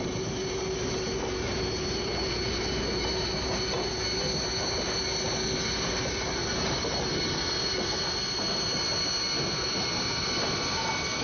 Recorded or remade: recorded